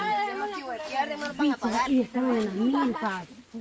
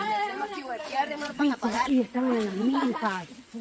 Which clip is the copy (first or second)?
second